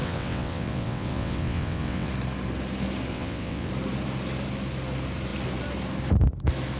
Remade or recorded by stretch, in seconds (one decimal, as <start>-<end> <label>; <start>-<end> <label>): 0.0-2.1 remade; 2.1-3.1 recorded; 3.1-3.7 remade; 3.7-6.8 recorded